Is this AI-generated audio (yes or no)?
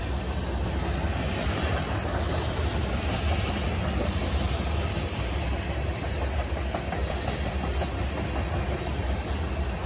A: no